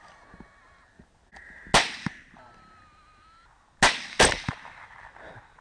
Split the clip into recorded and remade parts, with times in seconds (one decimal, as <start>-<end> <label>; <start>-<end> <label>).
0.0-5.6 recorded